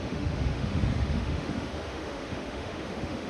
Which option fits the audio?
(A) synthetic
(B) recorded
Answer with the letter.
A